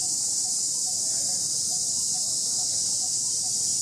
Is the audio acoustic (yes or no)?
yes